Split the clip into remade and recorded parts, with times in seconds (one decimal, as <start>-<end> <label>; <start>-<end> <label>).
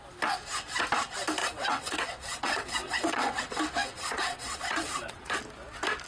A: 0.0-1.4 recorded; 1.4-3.4 remade; 3.4-3.8 recorded; 3.8-5.4 remade; 5.4-6.1 recorded